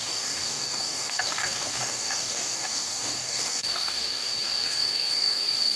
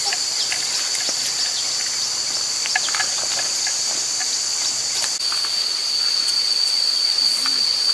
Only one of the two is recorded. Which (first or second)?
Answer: second